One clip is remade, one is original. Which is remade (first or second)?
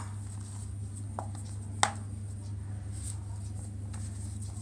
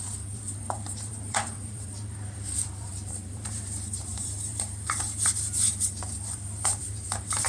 second